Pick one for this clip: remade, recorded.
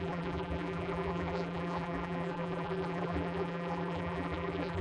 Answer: remade